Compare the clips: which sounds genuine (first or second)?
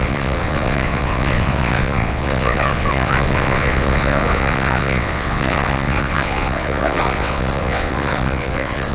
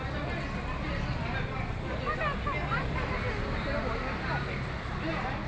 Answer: second